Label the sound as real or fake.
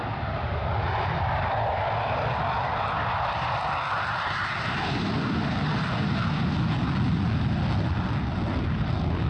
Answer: real